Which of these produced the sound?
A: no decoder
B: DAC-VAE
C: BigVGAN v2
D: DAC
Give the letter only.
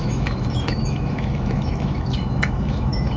B